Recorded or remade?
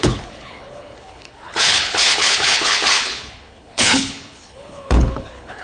remade